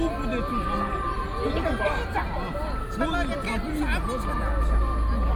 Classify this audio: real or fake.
real